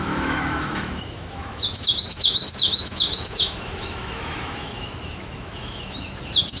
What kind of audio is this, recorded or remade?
remade